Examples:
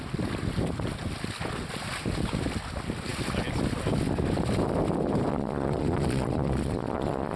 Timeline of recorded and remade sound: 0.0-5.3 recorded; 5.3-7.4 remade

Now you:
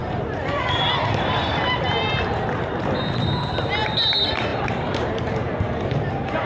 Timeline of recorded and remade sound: 0.0-6.5 remade

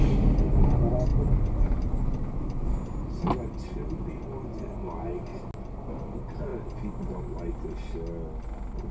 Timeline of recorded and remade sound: 0.0-8.9 recorded

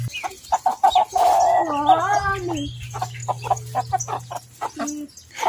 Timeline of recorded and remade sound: 0.0-5.5 recorded